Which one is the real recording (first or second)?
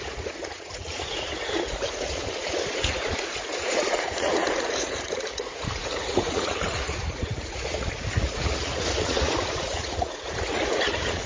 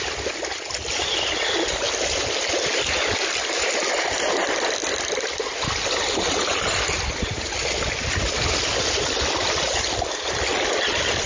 second